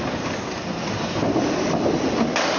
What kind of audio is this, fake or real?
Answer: real